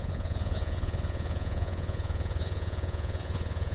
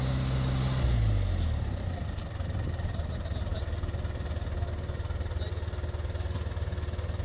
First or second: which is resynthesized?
first